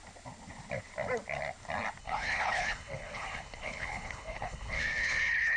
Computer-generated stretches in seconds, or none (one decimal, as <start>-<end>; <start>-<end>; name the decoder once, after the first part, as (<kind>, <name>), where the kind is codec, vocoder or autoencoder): 2.0-5.6 (codec, HILCodec)